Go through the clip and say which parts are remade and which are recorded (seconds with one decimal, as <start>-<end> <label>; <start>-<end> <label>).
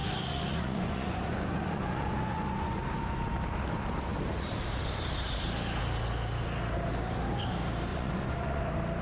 0.0-2.8 remade; 2.8-7.9 recorded; 7.9-8.6 remade; 8.6-9.0 recorded